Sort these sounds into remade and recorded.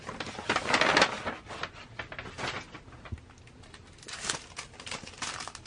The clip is recorded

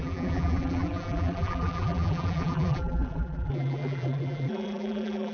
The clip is remade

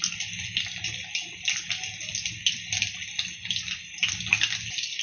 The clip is recorded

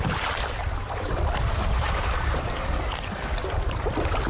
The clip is recorded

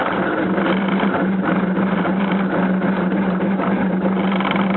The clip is recorded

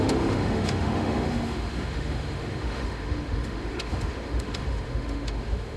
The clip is remade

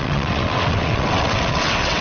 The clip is remade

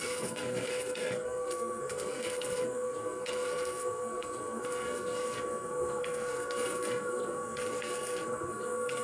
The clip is remade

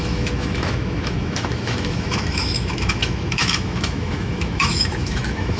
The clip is remade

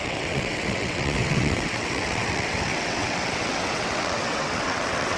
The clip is remade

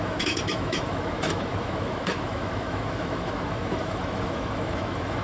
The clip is remade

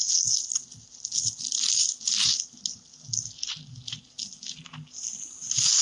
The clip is recorded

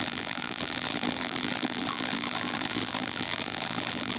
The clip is remade